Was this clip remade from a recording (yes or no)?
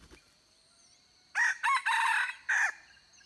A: no